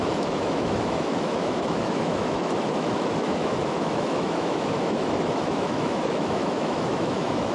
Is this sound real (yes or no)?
no